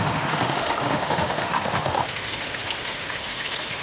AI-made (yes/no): yes